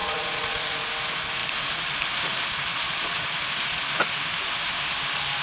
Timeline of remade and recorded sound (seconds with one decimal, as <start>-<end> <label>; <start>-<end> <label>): 0.0-0.9 remade; 0.9-2.7 recorded; 2.7-3.4 remade; 3.4-5.4 recorded